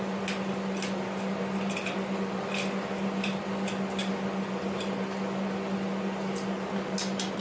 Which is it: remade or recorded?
recorded